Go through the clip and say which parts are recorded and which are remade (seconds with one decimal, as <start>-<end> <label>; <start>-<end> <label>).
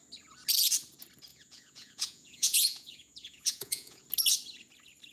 0.0-1.3 recorded; 1.3-4.0 remade; 4.0-5.1 recorded